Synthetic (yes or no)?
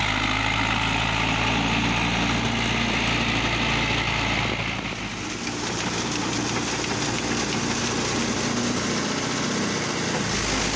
no